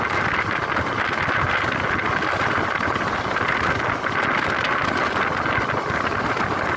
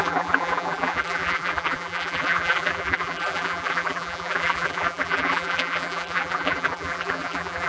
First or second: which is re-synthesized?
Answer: second